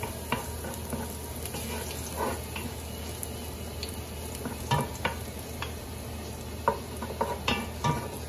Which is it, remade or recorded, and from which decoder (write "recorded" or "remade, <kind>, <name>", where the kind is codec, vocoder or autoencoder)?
recorded